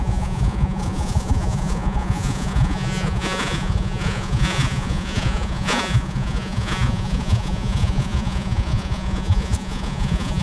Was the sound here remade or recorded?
remade